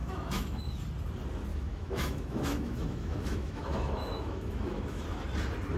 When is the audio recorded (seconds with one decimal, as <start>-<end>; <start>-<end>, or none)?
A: 0.6-1.5; 5.0-5.8